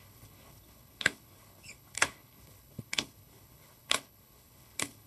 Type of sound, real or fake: fake